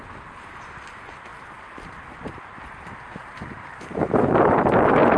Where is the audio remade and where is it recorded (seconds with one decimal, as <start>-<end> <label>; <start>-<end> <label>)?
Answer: 0.0-1.3 recorded; 1.3-4.4 remade; 4.4-5.2 recorded